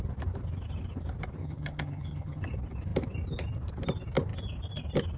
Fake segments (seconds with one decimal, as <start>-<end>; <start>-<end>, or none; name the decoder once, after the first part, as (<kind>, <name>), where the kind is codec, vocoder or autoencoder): 1.4-2.4 (vocoder, HiFi-GAN)